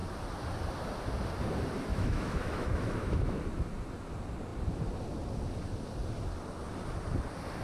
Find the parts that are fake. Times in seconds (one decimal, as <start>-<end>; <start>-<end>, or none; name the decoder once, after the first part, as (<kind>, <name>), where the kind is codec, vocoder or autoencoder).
1.9-3.4 (autoencoder, DAC-VAE)